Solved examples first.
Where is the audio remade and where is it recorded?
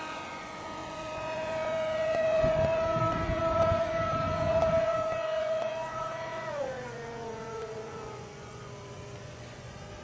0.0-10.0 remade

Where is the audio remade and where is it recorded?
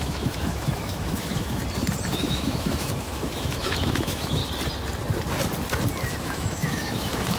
0.0-1.6 remade; 1.6-2.1 recorded; 2.1-4.4 remade; 4.4-6.2 recorded; 6.2-7.4 remade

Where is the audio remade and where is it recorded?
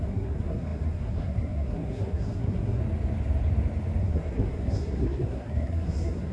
0.0-2.8 remade; 2.8-4.0 recorded; 4.0-6.3 remade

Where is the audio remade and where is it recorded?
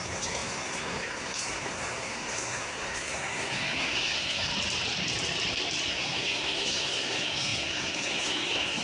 0.0-4.5 remade; 4.5-5.9 recorded; 5.9-8.8 remade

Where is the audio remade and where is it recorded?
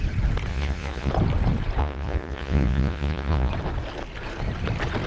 0.0-0.5 recorded; 0.5-1.1 remade; 1.1-1.8 recorded; 1.8-3.5 remade; 3.5-5.1 recorded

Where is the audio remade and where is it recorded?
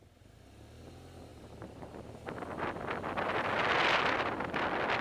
0.0-1.3 recorded; 1.3-2.1 remade; 2.1-5.0 recorded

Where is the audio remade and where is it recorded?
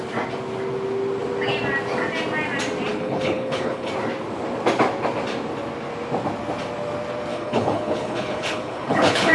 0.0-2.9 recorded; 2.9-3.9 remade; 3.9-7.3 recorded; 7.3-9.3 remade